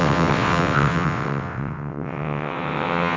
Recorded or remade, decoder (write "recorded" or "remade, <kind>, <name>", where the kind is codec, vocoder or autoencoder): remade, vocoder, WaveNeXt